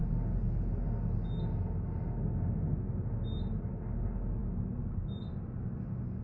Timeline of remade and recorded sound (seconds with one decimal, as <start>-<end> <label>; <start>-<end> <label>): 0.0-6.2 recorded